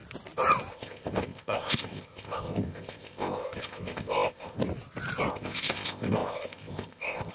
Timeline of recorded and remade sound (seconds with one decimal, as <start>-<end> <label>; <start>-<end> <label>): 0.0-0.7 recorded; 0.7-4.6 remade; 4.6-5.3 recorded; 5.3-7.3 remade